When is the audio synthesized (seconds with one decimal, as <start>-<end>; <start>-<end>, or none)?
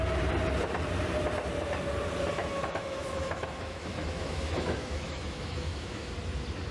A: 2.4-6.1